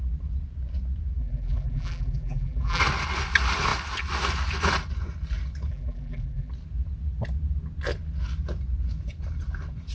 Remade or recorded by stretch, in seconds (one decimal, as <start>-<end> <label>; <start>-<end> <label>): 0.0-1.2 recorded; 1.2-2.8 remade; 2.8-5.7 recorded; 5.7-6.5 remade; 6.5-9.9 recorded